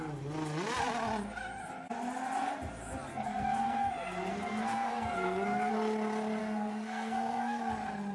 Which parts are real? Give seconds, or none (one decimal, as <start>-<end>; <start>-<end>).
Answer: 0.0-3.1; 3.9-4.3; 5.7-6.4; 7.6-8.1